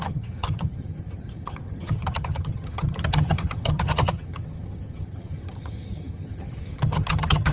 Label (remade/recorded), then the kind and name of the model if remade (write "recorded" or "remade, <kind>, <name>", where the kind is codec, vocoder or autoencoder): remade, vocoder, HiFi-GAN